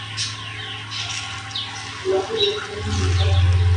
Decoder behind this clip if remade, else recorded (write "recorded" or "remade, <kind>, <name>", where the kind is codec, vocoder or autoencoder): recorded